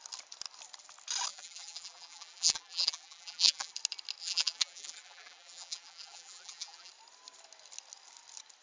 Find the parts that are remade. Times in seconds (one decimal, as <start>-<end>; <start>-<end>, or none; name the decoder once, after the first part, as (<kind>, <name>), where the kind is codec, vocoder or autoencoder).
1.3-3.7 (vocoder, BigVGAN v2); 4.2-6.9